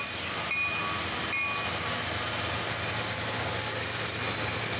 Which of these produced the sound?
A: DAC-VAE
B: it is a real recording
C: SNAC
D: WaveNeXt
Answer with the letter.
B